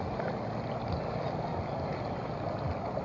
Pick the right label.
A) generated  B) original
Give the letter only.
B